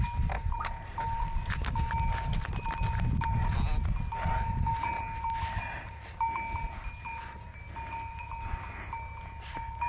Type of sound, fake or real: real